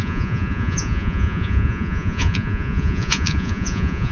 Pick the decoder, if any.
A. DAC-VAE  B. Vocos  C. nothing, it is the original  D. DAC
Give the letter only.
B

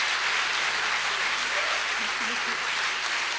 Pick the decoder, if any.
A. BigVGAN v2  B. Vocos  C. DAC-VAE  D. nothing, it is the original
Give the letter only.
D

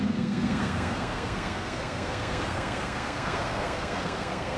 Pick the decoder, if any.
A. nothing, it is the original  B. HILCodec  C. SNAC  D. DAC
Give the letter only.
C